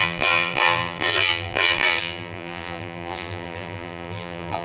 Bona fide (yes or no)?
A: no